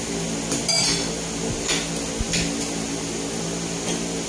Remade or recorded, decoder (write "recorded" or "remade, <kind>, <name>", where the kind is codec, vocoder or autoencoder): recorded